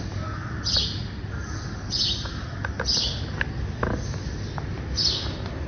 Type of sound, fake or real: real